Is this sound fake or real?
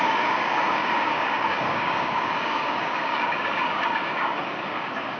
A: fake